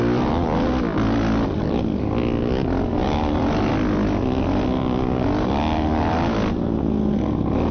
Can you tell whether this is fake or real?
real